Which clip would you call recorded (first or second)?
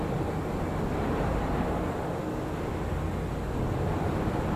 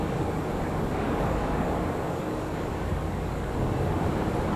first